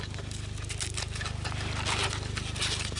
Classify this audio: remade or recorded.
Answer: recorded